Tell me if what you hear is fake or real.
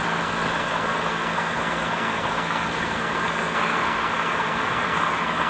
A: fake